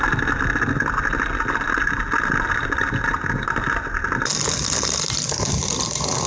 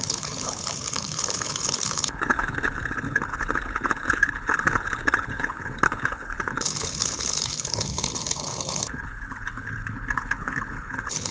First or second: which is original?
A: first